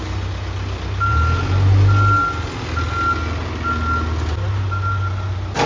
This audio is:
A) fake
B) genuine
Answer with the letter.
B